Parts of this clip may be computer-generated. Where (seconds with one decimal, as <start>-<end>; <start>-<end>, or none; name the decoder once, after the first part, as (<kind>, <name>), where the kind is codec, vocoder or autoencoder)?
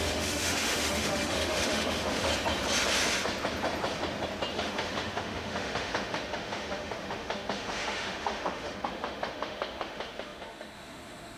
0.0-2.3 (autoencoder, DAC-VAE); 4.5-11.4